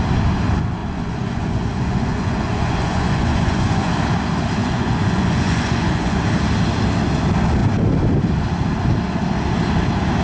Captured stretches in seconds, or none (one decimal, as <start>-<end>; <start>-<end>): 0.0-0.8; 3.9-4.6; 6.2-10.2